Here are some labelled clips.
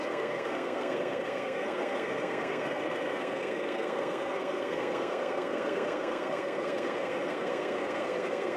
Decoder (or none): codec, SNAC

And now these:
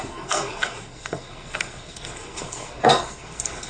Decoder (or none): codec, SNAC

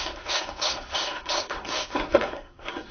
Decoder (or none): codec, SNAC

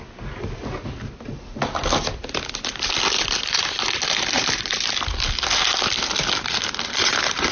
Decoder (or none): none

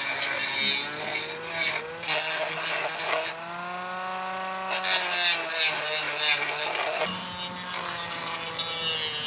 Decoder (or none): none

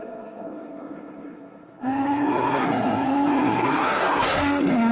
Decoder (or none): codec, SNAC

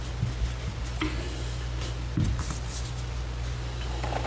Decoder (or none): none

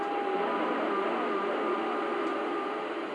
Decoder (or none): none